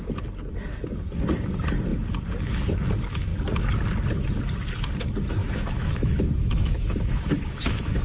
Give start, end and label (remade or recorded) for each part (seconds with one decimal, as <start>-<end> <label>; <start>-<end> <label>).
0.0-5.4 recorded; 5.4-8.0 remade